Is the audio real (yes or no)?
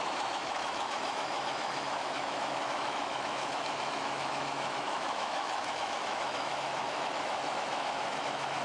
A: no